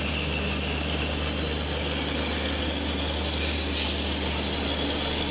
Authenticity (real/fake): real